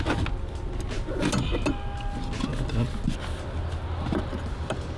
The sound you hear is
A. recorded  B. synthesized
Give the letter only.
A